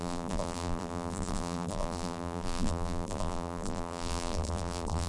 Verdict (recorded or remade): remade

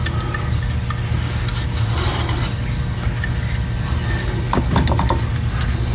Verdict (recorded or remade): recorded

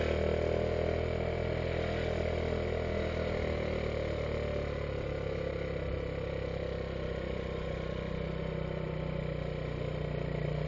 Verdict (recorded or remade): recorded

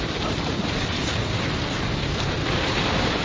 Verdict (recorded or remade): recorded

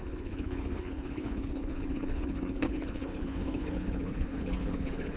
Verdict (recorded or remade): remade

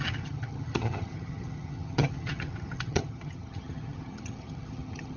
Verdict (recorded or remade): remade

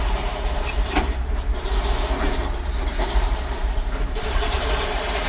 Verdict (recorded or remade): remade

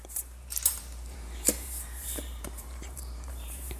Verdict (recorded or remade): remade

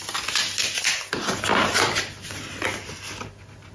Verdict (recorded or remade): recorded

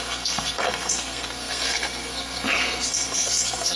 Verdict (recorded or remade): remade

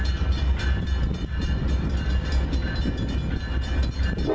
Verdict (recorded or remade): remade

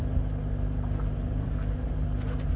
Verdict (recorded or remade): recorded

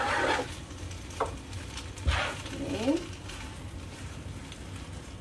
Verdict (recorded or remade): recorded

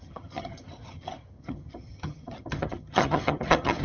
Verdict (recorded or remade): remade